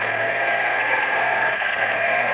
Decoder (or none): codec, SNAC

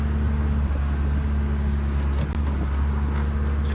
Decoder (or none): none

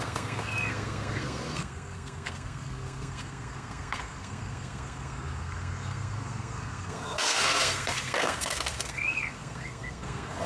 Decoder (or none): codec, SNAC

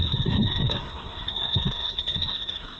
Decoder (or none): codec, SNAC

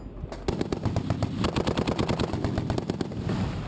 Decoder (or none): none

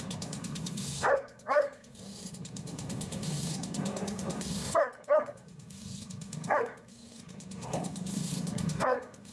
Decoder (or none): codec, SNAC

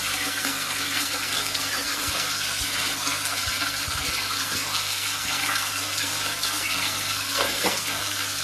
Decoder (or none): codec, SNAC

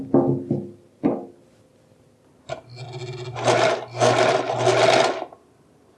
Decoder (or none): none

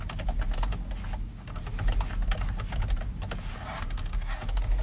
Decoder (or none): none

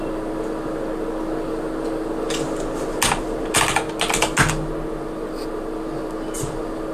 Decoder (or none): none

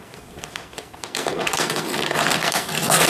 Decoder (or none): codec, SNAC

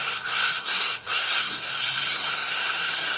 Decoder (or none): codec, SNAC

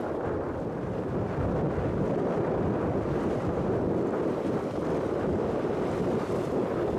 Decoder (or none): none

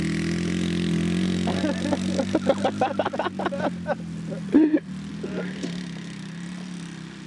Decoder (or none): none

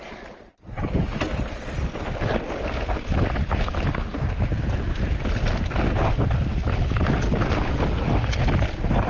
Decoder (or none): none